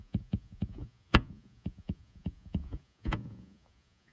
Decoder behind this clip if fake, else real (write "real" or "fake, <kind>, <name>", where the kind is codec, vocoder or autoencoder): fake, vocoder, Vocos